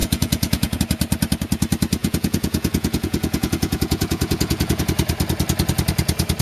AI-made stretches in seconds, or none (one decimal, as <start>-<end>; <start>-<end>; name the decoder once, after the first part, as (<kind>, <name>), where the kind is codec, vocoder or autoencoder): 0.0-0.8 (vocoder, Vocos); 2.0-4.8

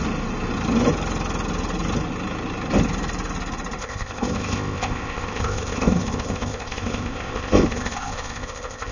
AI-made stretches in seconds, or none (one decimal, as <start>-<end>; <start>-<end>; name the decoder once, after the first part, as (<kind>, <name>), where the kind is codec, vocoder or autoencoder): 3.8-8.9 (codec, ZipCodec)

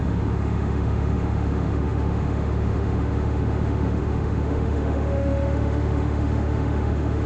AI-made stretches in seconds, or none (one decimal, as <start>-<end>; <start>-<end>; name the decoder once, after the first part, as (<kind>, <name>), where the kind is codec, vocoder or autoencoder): 0.0-7.3 (autoencoder, DAC-VAE)

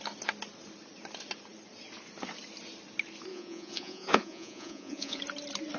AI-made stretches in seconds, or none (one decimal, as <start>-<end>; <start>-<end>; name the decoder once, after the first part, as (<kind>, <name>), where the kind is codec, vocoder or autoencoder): 3.3-5.2 (vocoder, Vocos)

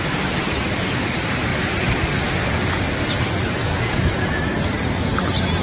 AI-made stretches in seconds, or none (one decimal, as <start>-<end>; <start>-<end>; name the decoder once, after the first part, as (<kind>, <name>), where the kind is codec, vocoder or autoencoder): 3.6-4.4 (vocoder, Vocos)

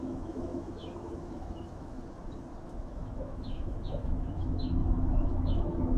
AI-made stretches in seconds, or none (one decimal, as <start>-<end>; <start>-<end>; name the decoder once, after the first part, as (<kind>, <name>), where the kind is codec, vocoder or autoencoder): 0.0-2.0 (autoencoder, DAC-VAE); 2.6-4.8; 5.3-6.0

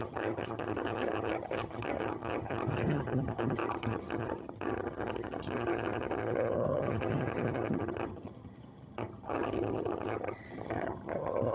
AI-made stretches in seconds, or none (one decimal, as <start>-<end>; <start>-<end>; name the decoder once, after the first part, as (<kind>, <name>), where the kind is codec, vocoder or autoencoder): 0.0-11.5 (vocoder, HiFi-GAN)